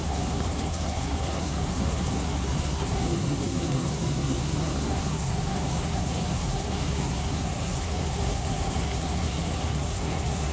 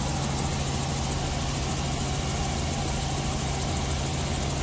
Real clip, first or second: second